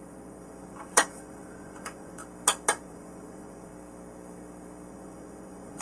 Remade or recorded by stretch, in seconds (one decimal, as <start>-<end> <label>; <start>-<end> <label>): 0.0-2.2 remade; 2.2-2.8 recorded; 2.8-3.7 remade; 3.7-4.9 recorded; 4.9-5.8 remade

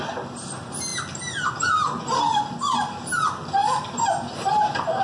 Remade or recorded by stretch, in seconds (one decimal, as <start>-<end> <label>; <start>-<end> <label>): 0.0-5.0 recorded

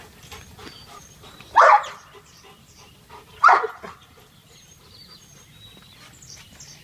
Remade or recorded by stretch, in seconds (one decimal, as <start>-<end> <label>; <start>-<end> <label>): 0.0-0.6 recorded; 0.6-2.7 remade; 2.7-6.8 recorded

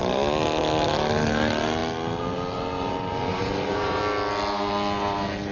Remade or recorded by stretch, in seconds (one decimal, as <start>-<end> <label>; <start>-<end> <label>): 0.0-3.3 recorded; 3.3-4.0 remade; 4.0-5.5 recorded

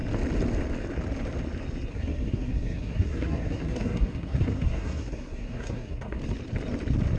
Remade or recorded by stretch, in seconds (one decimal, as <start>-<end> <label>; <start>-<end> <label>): 0.0-1.9 recorded; 1.9-6.2 remade; 6.2-7.2 recorded

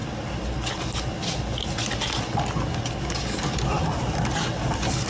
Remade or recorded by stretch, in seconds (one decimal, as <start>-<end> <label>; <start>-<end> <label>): 0.0-5.1 recorded

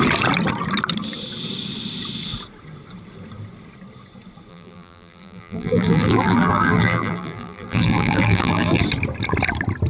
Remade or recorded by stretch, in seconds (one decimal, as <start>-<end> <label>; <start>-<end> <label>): 0.0-4.5 recorded; 4.5-8.8 remade; 8.8-9.9 recorded

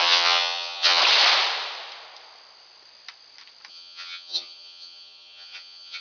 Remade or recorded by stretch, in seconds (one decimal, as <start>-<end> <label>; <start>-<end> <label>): 0.0-1.0 remade; 1.0-3.7 recorded; 3.7-6.0 remade